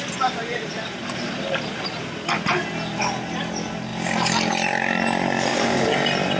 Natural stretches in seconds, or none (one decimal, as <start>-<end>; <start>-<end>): 0.0-0.5; 1.7-5.5